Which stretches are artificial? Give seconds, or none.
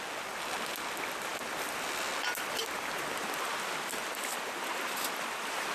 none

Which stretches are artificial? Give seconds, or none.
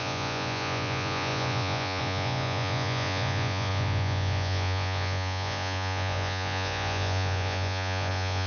0.0-8.5 (vocoder, Vocos)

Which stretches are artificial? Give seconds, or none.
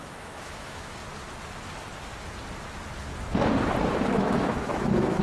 0.0-1.0 (autoencoder, DAC-VAE); 4.1-5.2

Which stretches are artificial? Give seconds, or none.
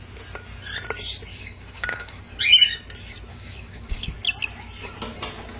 1.3-2.2 (codec, DAC); 3.3-4.1